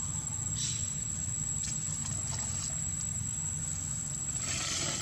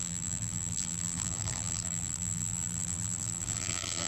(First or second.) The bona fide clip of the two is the first